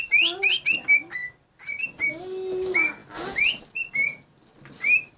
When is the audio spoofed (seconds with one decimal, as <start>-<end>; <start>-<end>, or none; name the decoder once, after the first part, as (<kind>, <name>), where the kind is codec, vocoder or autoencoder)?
none